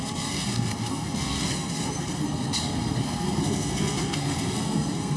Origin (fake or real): fake